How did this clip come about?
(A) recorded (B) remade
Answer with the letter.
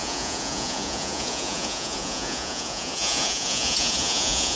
B